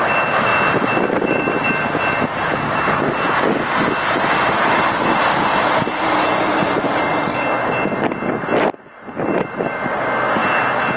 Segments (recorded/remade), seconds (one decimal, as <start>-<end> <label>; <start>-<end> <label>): 0.0-0.5 recorded; 0.5-1.7 remade; 1.7-4.6 recorded; 4.6-6.0 remade; 6.0-11.0 recorded